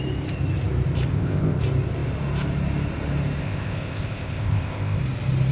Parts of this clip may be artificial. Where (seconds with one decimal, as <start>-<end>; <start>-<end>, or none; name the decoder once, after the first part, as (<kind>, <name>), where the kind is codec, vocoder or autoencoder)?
1.1-1.6 (codec, ZipCodec); 3.4-5.0